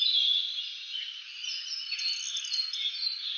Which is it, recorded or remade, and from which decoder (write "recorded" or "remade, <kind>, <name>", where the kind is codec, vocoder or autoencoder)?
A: recorded